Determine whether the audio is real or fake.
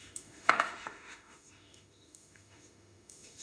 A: fake